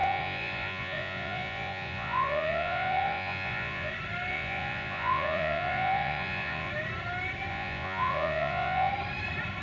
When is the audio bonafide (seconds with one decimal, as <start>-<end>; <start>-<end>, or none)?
3.9-4.3; 6.7-7.5; 8.9-9.6